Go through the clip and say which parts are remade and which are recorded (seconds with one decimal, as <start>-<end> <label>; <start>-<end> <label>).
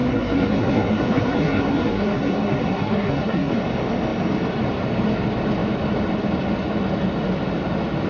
0.0-3.5 remade; 3.5-8.1 recorded